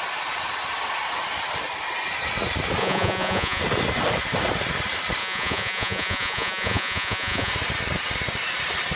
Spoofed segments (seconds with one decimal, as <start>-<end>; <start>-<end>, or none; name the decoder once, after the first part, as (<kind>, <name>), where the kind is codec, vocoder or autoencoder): 2.8-3.6 (vocoder, Vocos); 5.2-7.5

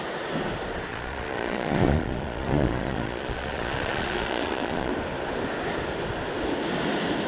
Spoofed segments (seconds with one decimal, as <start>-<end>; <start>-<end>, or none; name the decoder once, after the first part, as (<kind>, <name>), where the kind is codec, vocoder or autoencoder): 0.9-4.9 (vocoder, Vocos)

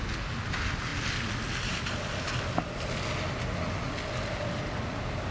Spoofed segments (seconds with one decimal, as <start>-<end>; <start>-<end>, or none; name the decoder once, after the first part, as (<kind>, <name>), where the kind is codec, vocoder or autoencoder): none

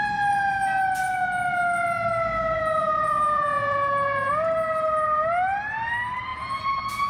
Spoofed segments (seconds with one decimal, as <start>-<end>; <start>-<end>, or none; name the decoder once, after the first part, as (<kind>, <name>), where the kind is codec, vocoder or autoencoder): 2.8-4.3 (vocoder, Vocos); 6.3-7.1

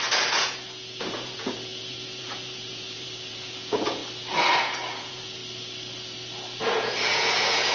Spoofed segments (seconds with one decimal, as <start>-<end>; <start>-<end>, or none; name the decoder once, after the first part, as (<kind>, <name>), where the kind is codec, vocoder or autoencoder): 0.0-4.0 (vocoder, Vocos); 4.6-5.4; 6.6-7.7

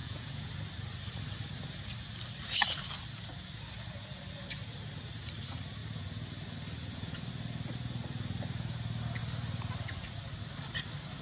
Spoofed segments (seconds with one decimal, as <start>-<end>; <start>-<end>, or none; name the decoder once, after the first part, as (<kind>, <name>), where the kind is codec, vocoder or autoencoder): 0.0-0.5 (vocoder, Vocos)

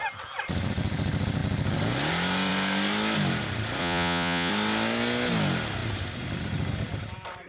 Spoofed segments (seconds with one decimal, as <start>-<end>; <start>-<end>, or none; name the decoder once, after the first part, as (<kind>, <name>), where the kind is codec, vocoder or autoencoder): 3.8-4.5 (vocoder, Vocos)

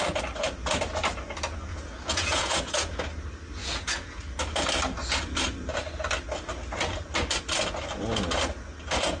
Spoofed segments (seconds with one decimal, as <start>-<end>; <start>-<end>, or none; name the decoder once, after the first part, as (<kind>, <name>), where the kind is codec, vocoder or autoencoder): 1.7-3.0 (vocoder, Vocos); 3.6-4.2